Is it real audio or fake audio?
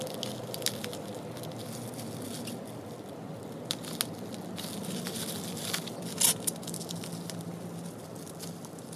real